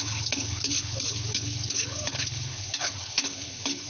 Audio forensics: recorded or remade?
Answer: remade